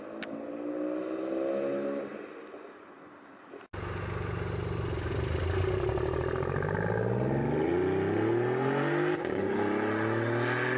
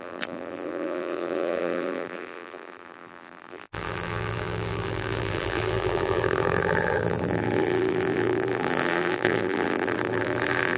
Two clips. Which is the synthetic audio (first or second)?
second